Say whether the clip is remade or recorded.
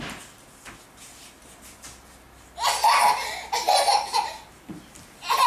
recorded